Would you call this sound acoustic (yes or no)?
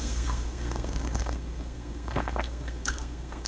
no